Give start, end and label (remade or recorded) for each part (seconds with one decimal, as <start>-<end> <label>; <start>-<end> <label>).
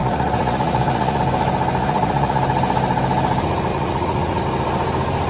0.0-1.2 remade; 1.2-1.8 recorded; 1.8-2.4 remade; 2.4-3.7 recorded; 3.7-4.4 remade; 4.4-5.3 recorded